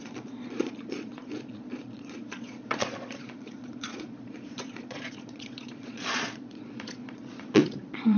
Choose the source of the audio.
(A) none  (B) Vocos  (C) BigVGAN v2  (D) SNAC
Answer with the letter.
B